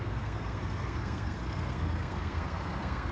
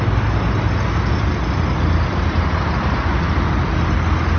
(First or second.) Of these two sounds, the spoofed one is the first